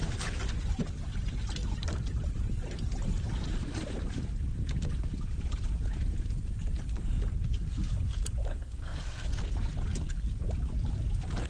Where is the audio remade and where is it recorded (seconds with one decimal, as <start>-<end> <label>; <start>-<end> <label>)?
0.0-8.5 recorded; 8.5-9.4 remade; 9.4-11.5 recorded